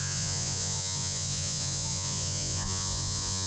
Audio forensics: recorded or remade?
remade